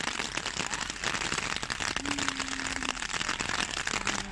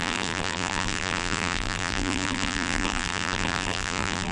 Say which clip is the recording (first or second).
first